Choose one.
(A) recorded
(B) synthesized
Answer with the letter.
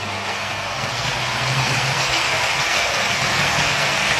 B